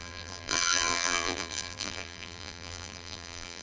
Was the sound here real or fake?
fake